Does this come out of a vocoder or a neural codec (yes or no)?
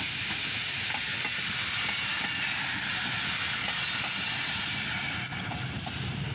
no